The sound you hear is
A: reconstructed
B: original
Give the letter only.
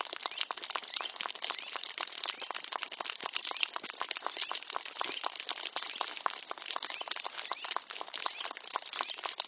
B